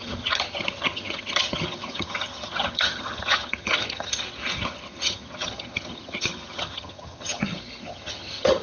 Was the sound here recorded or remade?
remade